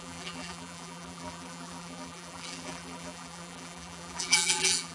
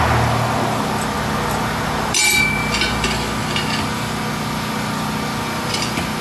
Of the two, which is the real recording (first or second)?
second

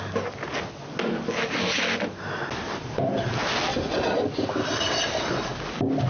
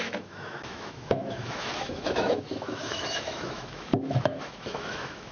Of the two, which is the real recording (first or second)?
first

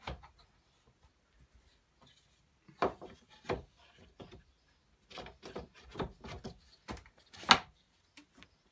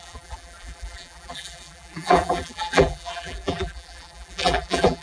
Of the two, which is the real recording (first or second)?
first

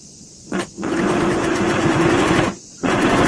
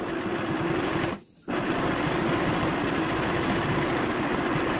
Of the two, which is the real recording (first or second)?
second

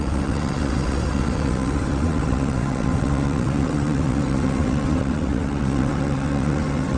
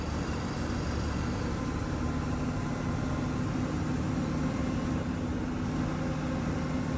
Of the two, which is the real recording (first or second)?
second